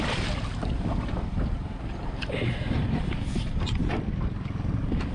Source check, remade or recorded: recorded